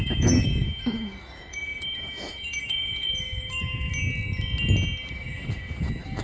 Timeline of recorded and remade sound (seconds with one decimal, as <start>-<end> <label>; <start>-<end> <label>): 0.0-3.9 remade; 3.9-5.1 recorded; 5.1-6.2 remade